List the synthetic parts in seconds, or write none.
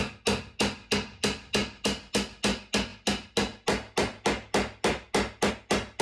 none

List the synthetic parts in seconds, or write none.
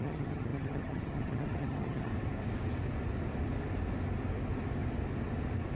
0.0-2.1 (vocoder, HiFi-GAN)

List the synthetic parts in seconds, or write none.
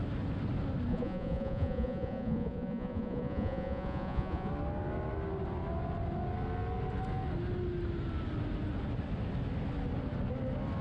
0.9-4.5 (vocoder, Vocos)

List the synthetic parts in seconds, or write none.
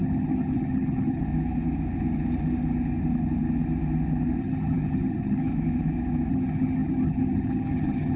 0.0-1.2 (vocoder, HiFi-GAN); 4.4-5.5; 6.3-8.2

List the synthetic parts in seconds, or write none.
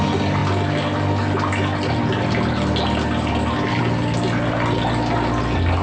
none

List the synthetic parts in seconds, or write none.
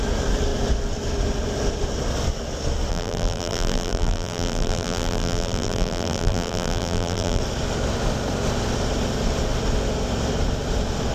2.9-7.4 (vocoder, BigVGAN v2)